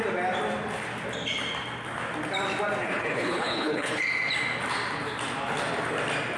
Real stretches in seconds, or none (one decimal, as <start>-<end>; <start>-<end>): 0.0-2.8; 4.0-6.4